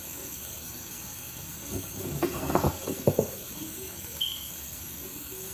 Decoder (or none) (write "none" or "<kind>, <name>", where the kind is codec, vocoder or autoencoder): codec, SNAC